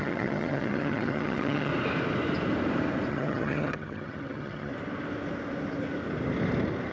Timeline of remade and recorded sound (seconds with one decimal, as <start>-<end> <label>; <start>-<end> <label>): 0.0-1.7 remade; 1.7-3.1 recorded; 3.1-4.7 remade; 4.7-6.9 recorded